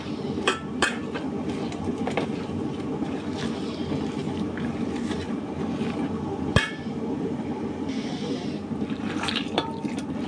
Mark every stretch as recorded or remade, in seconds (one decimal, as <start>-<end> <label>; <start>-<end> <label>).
0.0-10.3 remade